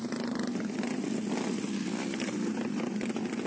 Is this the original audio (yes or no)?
yes